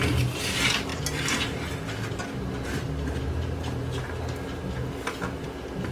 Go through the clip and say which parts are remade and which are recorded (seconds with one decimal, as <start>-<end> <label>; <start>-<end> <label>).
0.0-5.9 recorded